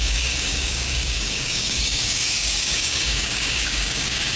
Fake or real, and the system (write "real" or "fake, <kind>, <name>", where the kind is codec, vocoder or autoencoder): fake, codec, DAC